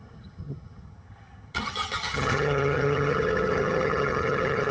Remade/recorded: remade